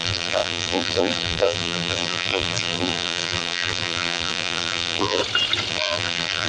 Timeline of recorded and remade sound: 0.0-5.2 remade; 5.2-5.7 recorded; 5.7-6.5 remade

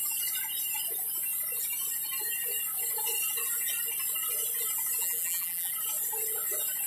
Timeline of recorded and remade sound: 0.0-5.0 recorded; 5.0-5.7 remade; 5.7-6.9 recorded

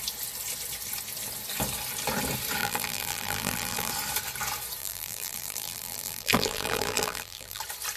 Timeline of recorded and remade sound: 0.0-2.6 recorded; 2.6-3.9 remade; 3.9-4.8 recorded; 4.8-7.6 remade; 7.6-8.0 recorded

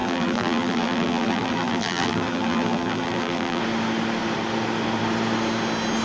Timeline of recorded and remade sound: 0.0-3.6 remade; 3.6-6.0 recorded